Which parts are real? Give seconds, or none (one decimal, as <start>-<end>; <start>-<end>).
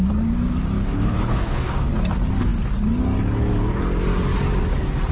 0.0-0.8; 1.9-5.1